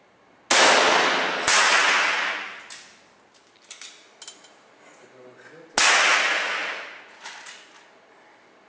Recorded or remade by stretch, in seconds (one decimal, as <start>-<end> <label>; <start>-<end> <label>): 0.0-6.6 recorded; 6.6-7.2 remade; 7.2-8.7 recorded